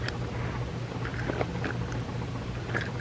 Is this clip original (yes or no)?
no